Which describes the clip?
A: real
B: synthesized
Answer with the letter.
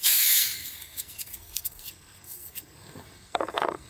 B